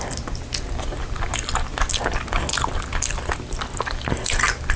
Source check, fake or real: real